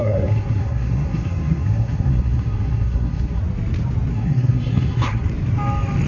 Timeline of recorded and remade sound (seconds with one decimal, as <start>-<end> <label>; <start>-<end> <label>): 0.0-3.4 remade; 3.4-4.1 recorded; 4.1-5.3 remade; 5.3-6.1 recorded